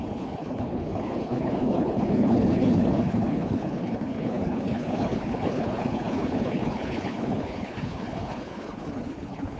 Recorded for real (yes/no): no